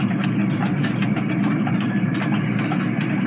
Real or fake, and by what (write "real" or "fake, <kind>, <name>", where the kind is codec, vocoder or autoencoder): fake, vocoder, BigVGAN v2